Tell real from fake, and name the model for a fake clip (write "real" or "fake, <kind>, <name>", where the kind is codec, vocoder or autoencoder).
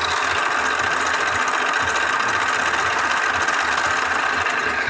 real